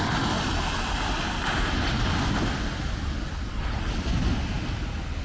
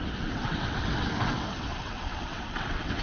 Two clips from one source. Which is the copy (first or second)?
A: second